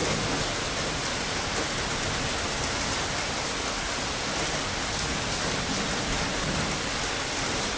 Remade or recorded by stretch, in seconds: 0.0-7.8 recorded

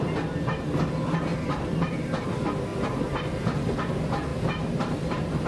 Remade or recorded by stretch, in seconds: 0.0-1.3 recorded; 1.3-2.3 remade; 2.3-2.7 recorded; 2.7-3.6 remade; 3.6-4.3 recorded; 4.3-4.9 remade; 4.9-5.5 recorded

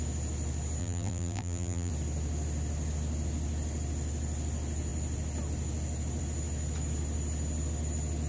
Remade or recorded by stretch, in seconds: 0.0-0.8 recorded; 0.8-1.9 remade; 1.9-8.3 recorded

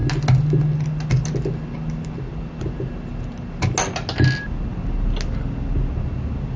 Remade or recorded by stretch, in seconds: 0.0-6.6 recorded